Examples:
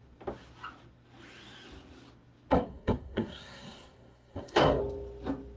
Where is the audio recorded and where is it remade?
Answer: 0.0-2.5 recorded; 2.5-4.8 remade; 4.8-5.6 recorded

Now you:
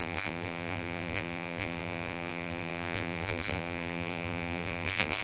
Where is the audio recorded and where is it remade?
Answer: 0.0-5.2 remade

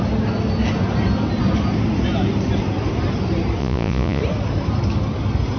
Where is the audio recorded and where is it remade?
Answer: 0.0-3.6 recorded; 3.6-4.2 remade; 4.2-5.6 recorded

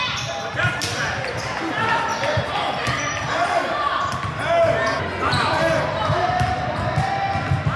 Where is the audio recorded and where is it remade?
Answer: 0.0-2.1 recorded; 2.1-2.7 remade; 2.7-7.8 recorded

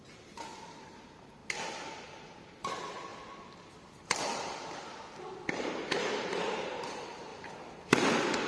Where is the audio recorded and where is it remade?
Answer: 0.0-1.4 remade; 1.4-2.0 recorded; 2.0-3.1 remade; 3.1-4.4 recorded; 4.4-4.9 remade; 4.9-5.7 recorded; 5.7-7.3 remade; 7.3-7.9 recorded; 7.9-8.5 remade

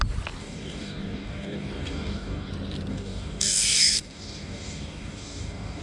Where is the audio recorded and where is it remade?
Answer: 0.0-0.4 recorded; 0.4-2.5 remade; 2.5-2.9 recorded; 2.9-5.8 remade

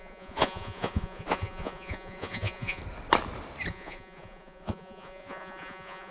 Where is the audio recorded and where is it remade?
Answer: 0.0-2.8 remade; 2.8-3.7 recorded; 3.7-6.1 remade